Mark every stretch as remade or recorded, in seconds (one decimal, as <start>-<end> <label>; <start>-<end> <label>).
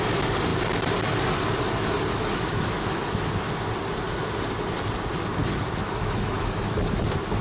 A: 0.0-2.1 recorded; 2.1-3.5 remade; 3.5-5.4 recorded; 5.4-7.4 remade